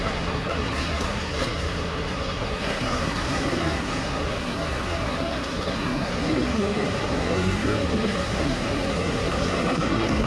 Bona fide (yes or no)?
no